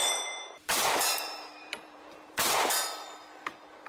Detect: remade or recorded remade